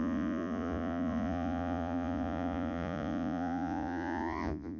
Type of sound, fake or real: fake